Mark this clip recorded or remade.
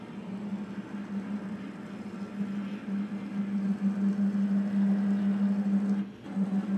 recorded